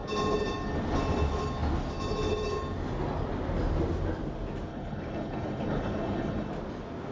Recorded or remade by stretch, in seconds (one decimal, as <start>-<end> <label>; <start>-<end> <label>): 0.0-4.7 recorded; 4.7-6.5 remade; 6.5-7.1 recorded